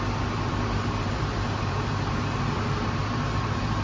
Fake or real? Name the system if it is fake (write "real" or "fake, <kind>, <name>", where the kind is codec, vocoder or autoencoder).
fake, vocoder, BigVGAN v2